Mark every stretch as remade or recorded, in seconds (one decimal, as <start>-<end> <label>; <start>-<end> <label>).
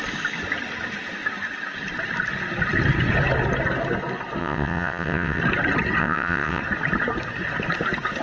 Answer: 0.0-4.4 recorded; 4.4-5.4 remade; 5.4-6.0 recorded; 6.0-6.6 remade; 6.6-8.2 recorded